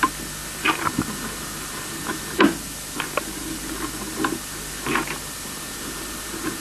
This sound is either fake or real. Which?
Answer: fake